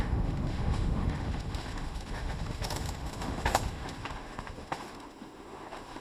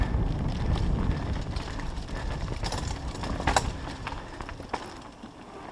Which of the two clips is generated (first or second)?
first